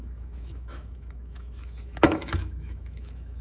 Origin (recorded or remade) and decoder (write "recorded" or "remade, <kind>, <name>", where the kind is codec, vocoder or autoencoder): remade, autoencoder, DAC-VAE